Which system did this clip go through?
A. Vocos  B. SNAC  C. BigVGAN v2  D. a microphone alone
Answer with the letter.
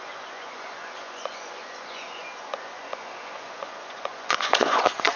A